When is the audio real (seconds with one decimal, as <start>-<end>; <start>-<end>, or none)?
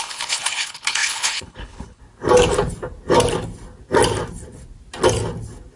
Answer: 2.0-5.8